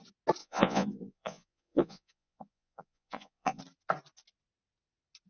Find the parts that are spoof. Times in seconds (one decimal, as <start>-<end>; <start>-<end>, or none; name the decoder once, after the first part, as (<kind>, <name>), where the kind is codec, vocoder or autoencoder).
0.4-3.6 (vocoder, Vocos)